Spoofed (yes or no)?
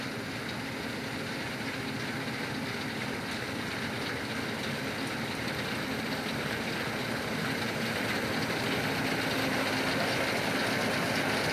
no